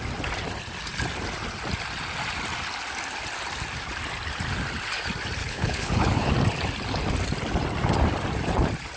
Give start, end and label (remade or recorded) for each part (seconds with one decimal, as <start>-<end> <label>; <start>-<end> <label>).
0.0-5.4 recorded; 5.4-6.3 remade; 6.3-9.0 recorded